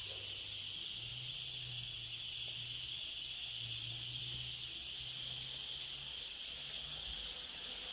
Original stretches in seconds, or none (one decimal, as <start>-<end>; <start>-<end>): 0.0-7.9